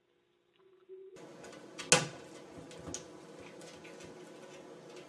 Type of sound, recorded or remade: recorded